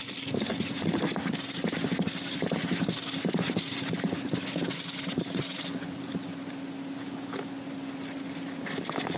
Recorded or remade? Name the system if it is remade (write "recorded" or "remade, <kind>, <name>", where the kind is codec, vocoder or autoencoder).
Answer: recorded